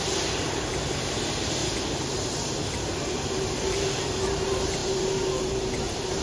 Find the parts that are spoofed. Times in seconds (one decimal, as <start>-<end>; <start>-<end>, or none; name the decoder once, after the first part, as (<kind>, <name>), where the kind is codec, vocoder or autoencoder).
0.0-6.2 (vocoder, BigVGAN v2)